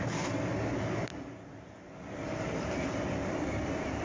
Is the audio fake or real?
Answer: real